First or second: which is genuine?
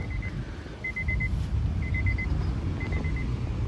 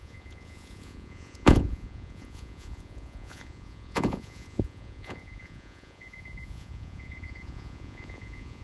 first